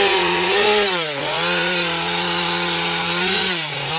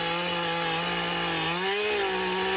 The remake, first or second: first